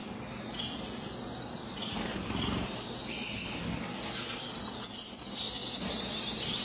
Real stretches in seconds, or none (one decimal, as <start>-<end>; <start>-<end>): 0.0-6.6